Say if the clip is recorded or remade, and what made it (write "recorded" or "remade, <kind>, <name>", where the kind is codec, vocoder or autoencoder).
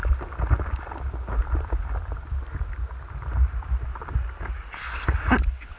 recorded